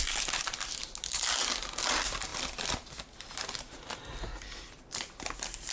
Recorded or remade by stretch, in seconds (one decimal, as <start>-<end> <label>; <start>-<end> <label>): 0.0-5.7 recorded